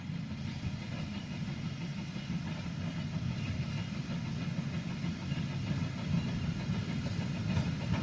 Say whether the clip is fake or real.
real